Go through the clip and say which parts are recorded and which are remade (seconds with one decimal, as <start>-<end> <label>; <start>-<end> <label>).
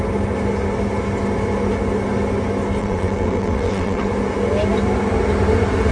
0.0-2.8 recorded; 2.8-4.1 remade; 4.1-5.9 recorded